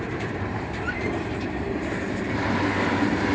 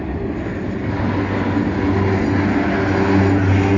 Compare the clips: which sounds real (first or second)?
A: second